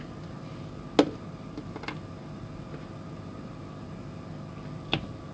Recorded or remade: recorded